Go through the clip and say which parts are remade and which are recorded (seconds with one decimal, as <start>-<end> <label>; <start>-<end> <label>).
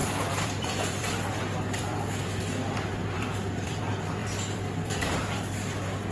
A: 0.0-2.0 remade; 2.0-3.0 recorded; 3.0-3.8 remade; 3.8-4.2 recorded; 4.2-5.4 remade; 5.4-6.1 recorded